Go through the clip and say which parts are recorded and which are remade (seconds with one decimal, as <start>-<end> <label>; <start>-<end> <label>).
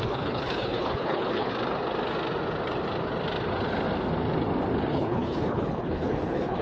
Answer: 0.0-1.5 remade; 1.5-4.9 recorded; 4.9-6.6 remade